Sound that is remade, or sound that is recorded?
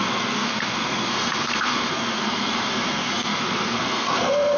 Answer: remade